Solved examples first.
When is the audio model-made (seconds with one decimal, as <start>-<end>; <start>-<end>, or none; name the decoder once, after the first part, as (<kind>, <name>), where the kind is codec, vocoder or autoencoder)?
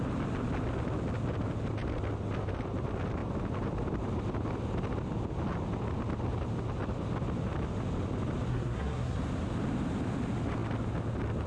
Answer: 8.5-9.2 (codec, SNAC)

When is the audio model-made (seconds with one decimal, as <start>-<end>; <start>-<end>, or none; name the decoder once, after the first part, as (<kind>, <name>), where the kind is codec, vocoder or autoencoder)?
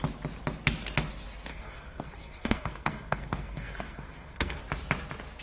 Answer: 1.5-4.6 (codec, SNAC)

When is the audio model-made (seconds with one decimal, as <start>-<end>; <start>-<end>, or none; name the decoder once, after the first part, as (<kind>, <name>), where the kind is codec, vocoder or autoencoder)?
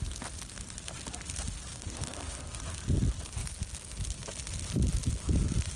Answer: 1.7-2.4 (codec, SNAC)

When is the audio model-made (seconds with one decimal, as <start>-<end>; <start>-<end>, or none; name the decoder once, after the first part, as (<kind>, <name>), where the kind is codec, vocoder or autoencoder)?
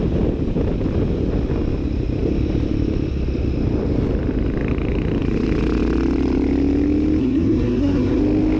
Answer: 7.2-8.2 (codec, SNAC)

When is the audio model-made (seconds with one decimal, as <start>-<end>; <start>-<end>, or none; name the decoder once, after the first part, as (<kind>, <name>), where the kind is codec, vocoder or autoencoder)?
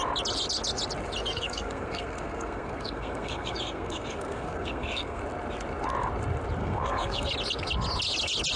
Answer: 1.2-5.2 (codec, SNAC); 6.6-7.3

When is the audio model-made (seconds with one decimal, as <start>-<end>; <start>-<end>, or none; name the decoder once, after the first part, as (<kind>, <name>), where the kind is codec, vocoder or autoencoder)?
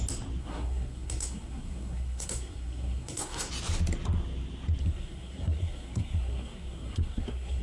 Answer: 0.4-3.5 (codec, SNAC); 4.8-7.6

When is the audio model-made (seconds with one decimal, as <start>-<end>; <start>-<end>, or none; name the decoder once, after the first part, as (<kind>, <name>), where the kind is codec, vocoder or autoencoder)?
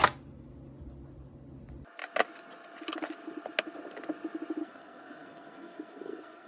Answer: 4.6-6.5 (codec, SNAC)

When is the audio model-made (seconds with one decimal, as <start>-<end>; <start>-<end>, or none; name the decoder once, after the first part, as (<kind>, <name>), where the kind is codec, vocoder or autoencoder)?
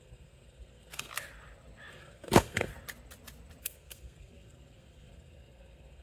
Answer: 0.0-1.1 (codec, SNAC); 1.9-2.7; 3.6-6.0